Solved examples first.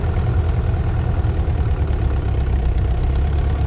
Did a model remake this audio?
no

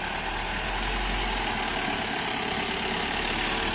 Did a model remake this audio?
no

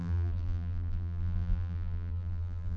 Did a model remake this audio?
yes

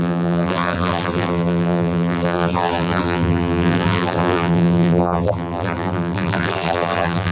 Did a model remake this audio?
yes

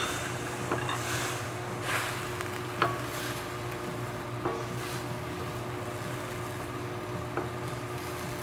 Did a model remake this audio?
no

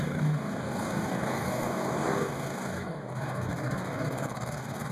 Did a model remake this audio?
yes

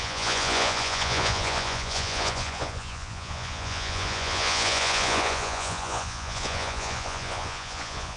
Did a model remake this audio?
yes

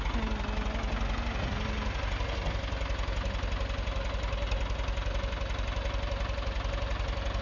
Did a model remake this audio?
no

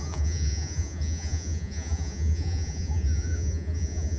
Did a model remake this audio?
yes